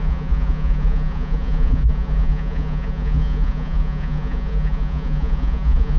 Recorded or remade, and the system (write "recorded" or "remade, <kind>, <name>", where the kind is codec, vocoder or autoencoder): remade, vocoder, Vocos